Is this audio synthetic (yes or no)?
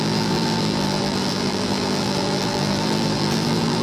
yes